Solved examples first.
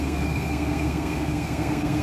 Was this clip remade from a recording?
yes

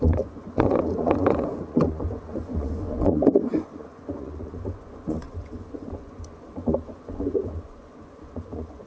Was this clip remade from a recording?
yes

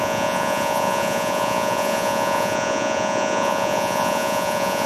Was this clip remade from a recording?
yes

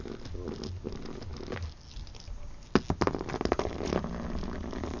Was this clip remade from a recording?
no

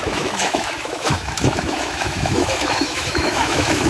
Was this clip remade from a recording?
yes